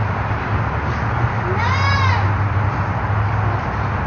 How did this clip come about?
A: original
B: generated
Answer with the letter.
A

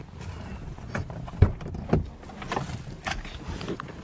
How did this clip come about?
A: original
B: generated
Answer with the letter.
A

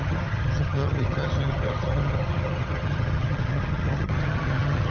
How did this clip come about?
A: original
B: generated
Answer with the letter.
B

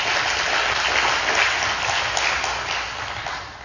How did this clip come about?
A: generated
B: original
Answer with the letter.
B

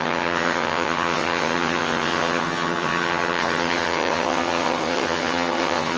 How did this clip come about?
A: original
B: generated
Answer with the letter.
B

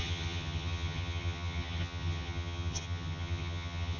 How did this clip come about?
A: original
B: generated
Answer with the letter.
B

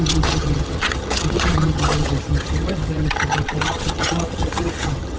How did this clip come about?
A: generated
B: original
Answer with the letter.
A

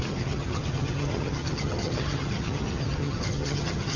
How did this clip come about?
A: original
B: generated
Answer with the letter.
B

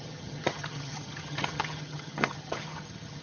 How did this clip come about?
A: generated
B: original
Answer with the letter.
A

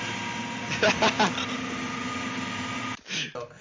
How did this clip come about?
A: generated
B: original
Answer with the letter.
B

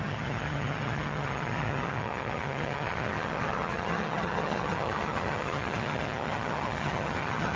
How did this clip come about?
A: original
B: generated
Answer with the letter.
B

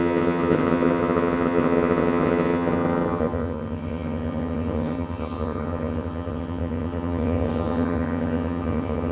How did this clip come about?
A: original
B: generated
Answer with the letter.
B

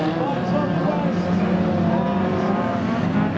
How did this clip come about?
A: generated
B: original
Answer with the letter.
B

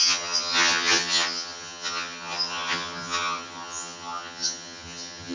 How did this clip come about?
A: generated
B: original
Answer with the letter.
A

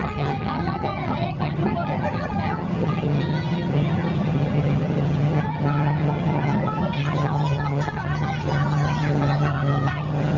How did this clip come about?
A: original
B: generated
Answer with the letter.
B